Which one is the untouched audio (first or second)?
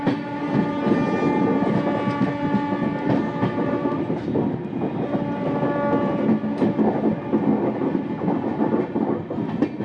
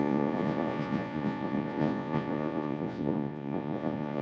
first